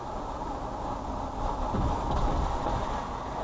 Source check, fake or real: real